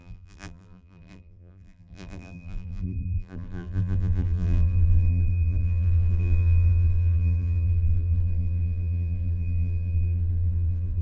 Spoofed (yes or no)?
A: yes